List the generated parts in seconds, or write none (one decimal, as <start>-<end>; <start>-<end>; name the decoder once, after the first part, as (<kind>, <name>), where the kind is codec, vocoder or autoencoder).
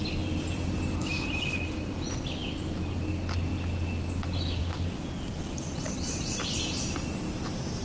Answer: none